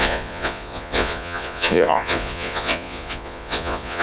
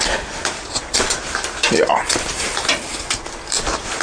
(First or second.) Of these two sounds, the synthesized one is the first